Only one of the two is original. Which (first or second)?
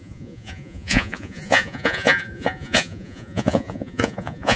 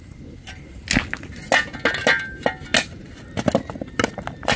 second